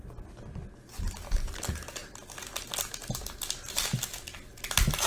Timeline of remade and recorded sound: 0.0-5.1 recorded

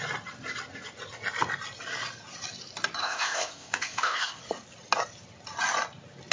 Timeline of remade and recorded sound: 0.0-3.0 recorded; 3.0-4.4 remade; 4.4-6.3 recorded

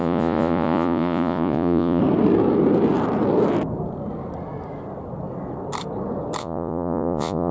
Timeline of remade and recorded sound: 0.0-2.0 remade; 2.0-6.4 recorded; 6.4-7.5 remade

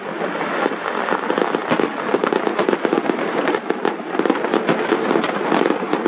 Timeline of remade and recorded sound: 0.0-6.1 recorded

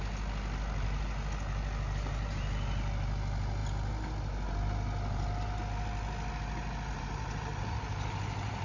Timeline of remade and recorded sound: 0.0-6.9 recorded; 6.9-8.6 remade

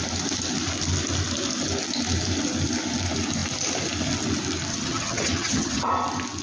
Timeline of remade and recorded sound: 0.0-4.7 recorded; 4.7-5.9 remade; 5.9-6.4 recorded

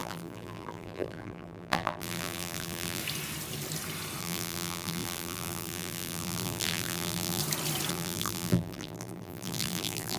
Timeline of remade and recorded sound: 0.0-3.0 remade; 3.0-4.2 recorded; 4.2-7.4 remade; 7.4-7.9 recorded; 7.9-10.2 remade